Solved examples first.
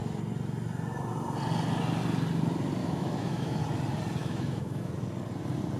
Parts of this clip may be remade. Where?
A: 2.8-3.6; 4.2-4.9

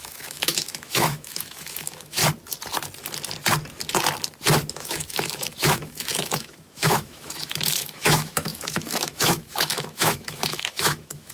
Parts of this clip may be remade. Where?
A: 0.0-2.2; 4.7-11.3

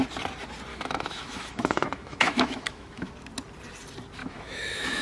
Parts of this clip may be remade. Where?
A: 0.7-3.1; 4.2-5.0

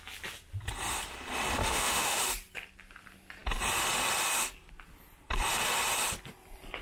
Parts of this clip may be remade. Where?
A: 1.6-2.2